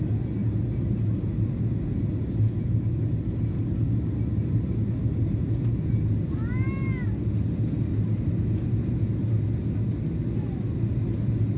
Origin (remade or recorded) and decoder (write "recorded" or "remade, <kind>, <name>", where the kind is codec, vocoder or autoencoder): recorded